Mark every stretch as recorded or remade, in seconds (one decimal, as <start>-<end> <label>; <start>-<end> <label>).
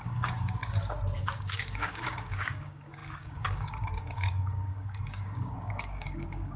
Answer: 0.0-0.6 remade; 0.6-1.2 recorded; 1.2-6.6 remade